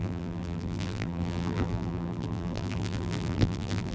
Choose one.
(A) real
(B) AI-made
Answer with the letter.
B